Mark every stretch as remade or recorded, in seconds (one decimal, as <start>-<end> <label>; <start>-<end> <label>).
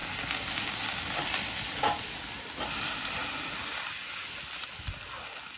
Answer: 0.0-5.6 recorded